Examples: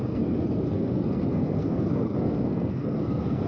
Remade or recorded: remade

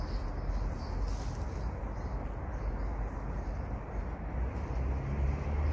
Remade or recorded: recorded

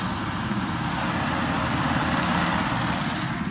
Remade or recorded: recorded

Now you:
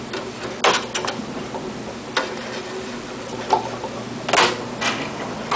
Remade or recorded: recorded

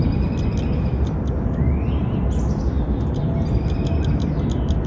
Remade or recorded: recorded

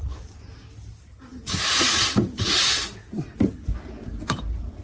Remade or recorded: recorded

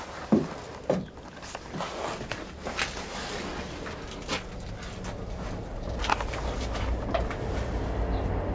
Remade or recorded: recorded